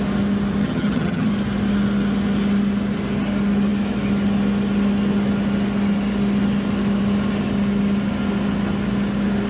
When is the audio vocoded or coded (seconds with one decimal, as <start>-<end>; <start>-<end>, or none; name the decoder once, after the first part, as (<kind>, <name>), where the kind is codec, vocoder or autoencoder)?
0.6-1.3 (vocoder, HiFi-GAN)